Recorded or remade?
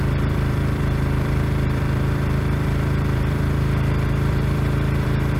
remade